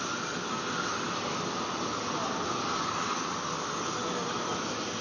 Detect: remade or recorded recorded